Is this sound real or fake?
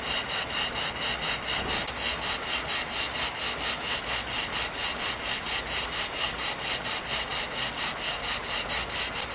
real